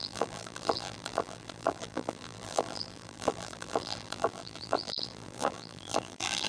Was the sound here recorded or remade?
remade